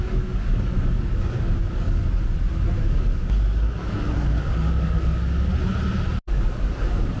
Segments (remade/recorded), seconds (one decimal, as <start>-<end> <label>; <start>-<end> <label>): 0.0-2.0 remade; 2.0-2.8 recorded; 2.8-5.5 remade; 5.5-6.3 recorded; 6.3-7.2 remade